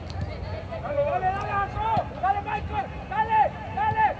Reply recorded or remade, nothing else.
recorded